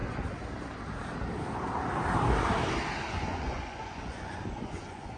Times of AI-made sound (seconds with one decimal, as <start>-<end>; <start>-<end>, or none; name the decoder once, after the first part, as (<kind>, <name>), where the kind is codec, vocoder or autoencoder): 3.1-5.2 (vocoder, Vocos)